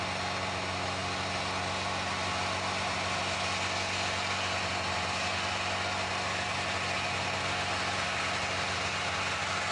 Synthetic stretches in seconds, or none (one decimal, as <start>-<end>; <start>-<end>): none